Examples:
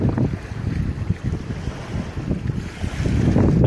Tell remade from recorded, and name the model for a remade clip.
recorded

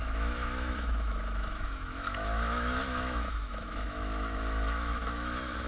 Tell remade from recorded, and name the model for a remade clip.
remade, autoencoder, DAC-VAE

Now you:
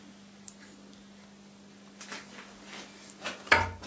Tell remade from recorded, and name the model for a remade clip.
recorded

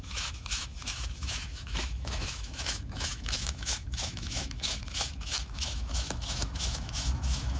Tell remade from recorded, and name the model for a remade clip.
remade, autoencoder, DAC-VAE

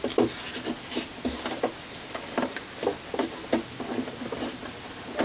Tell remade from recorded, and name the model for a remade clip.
recorded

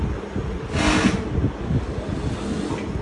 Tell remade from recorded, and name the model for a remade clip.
recorded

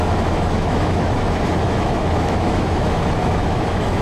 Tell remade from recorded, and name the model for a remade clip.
remade, autoencoder, DAC-VAE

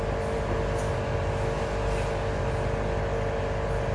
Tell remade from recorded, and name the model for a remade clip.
recorded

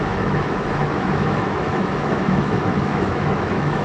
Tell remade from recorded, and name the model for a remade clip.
remade, autoencoder, DAC-VAE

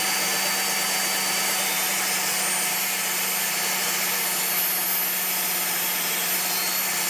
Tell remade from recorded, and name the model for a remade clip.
recorded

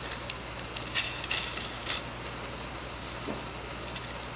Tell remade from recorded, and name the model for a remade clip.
recorded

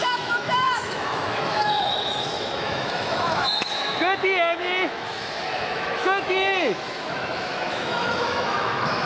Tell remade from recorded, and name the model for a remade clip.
remade, autoencoder, DAC-VAE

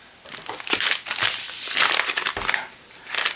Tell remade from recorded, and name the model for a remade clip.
recorded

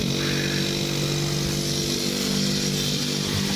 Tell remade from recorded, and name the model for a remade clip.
recorded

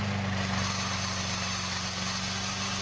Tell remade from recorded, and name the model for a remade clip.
recorded